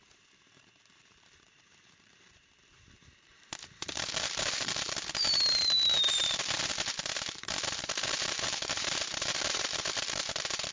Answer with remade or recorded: remade